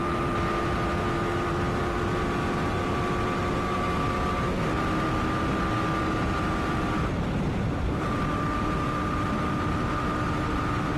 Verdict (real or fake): fake